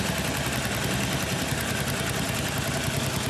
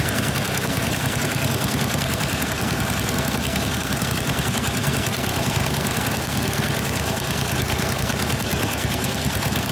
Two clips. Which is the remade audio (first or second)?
second